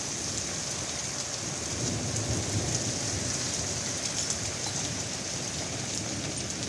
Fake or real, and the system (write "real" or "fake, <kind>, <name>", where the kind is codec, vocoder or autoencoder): real